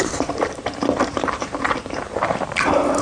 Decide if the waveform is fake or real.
fake